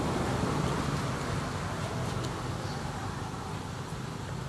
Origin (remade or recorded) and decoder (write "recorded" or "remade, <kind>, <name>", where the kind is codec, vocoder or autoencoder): recorded